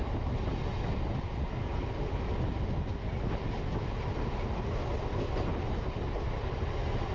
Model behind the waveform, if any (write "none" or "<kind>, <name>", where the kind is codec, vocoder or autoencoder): none